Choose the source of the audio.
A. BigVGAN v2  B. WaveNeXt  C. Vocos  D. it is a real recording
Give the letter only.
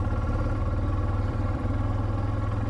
A